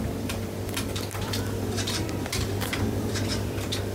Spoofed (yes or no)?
yes